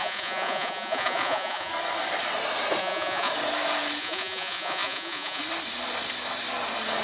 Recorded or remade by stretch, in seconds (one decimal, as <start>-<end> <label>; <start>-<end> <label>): 0.0-1.7 remade; 1.7-2.8 recorded; 2.8-3.3 remade; 3.3-4.0 recorded; 4.0-5.4 remade; 5.4-7.0 recorded